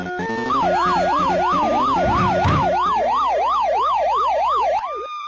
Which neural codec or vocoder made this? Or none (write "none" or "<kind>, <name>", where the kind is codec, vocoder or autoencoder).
none